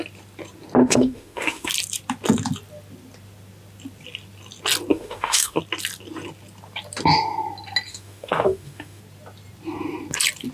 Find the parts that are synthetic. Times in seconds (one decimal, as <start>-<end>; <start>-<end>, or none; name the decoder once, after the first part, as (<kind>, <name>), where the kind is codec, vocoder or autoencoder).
0.8-1.7 (autoencoder, DAC-VAE); 4.9-5.6; 7.9-9.0